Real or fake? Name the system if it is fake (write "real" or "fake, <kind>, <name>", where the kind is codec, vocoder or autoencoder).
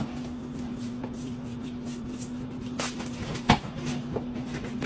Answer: fake, vocoder, BigVGAN v2